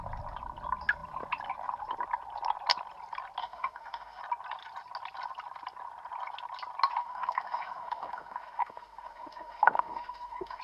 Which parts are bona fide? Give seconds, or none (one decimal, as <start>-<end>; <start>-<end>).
0.0-3.4; 4.2-7.0

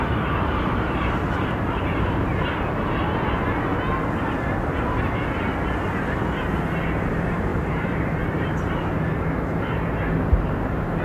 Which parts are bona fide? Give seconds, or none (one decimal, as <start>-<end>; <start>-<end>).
2.3-7.1

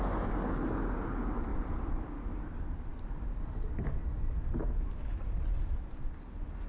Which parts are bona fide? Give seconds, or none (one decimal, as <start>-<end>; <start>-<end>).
0.0-1.5; 2.4-6.7

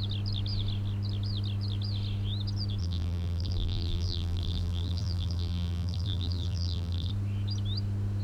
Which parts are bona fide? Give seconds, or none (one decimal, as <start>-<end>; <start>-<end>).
0.0-2.8; 7.1-8.2

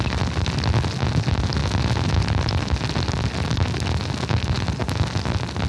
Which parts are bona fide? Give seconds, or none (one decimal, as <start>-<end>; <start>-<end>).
0.0-5.7